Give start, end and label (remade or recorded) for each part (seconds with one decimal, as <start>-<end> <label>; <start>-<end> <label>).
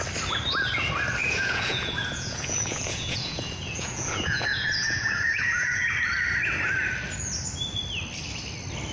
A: 0.0-1.2 recorded; 1.2-5.9 remade; 5.9-8.9 recorded